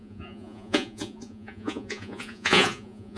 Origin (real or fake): fake